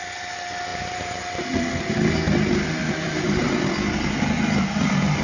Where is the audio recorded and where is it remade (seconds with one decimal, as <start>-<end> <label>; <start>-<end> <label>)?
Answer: 0.0-0.7 recorded; 0.7-1.2 remade; 1.2-2.8 recorded; 2.8-3.5 remade; 3.5-5.2 recorded